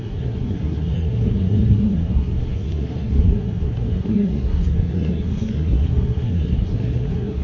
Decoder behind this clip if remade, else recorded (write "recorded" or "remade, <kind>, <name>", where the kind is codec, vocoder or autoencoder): remade, codec, SNAC